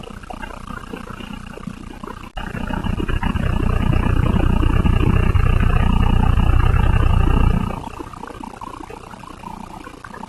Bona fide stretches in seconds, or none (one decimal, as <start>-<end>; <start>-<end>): 0.0-10.3